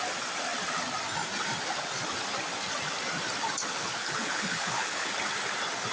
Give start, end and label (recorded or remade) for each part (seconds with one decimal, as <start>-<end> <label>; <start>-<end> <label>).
0.0-3.7 recorded; 3.7-5.1 remade; 5.1-5.9 recorded